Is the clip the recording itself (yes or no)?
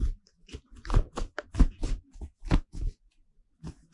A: yes